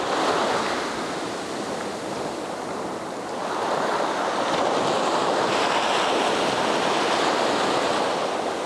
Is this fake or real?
real